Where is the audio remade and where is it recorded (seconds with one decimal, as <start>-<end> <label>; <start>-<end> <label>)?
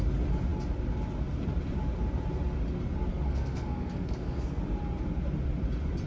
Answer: 0.0-3.1 recorded; 3.1-4.6 remade; 4.6-6.1 recorded